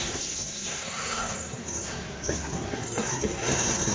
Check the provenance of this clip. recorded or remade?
remade